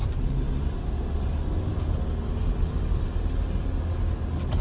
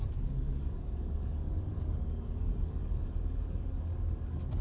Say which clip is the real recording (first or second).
first